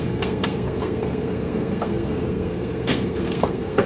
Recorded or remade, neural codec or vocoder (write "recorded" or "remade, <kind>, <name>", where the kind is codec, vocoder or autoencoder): remade, codec, SNAC